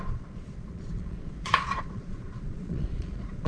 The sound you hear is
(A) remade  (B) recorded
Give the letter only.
A